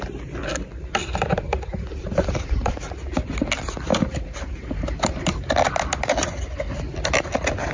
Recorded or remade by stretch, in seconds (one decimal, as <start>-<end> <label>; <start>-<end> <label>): 0.0-1.0 recorded; 1.0-2.9 remade; 2.9-3.9 recorded; 3.9-5.2 remade; 5.2-7.7 recorded